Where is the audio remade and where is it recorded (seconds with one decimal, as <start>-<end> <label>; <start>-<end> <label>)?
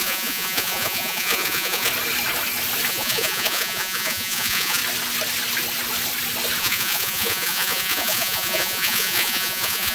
0.0-1.9 remade; 1.9-2.9 recorded; 2.9-4.8 remade; 4.8-6.6 recorded; 6.6-9.9 remade